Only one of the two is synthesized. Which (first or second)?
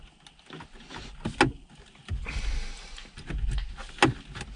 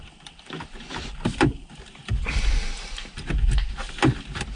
second